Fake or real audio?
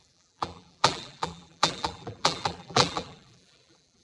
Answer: fake